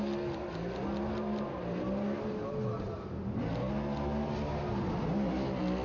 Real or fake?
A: real